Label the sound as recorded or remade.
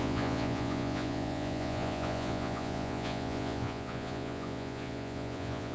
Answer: remade